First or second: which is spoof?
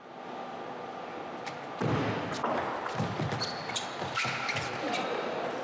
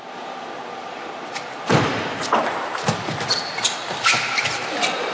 second